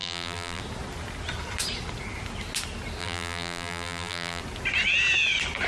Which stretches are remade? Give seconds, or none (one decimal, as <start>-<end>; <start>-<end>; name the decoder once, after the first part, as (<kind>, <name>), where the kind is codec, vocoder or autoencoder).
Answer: 0.0-0.6 (vocoder, BigVGAN v2); 3.0-4.4